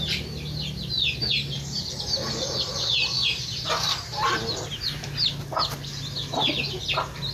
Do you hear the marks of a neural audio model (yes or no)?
no